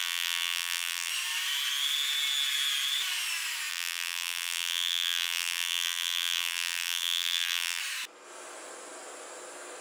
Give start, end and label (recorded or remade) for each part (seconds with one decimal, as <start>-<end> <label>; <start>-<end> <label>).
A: 0.0-1.1 remade; 1.1-3.7 recorded; 3.7-7.8 remade; 7.8-9.8 recorded